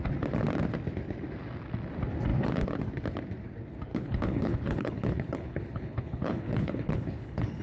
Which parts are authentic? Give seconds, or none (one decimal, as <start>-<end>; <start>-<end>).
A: 0.0-3.9

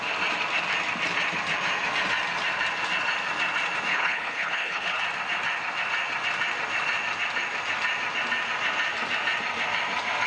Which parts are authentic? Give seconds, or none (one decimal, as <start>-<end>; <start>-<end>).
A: 0.0-3.9; 5.0-10.3